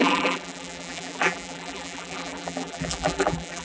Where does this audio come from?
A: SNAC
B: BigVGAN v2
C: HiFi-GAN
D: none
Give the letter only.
B